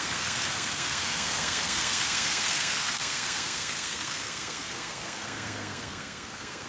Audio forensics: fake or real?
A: fake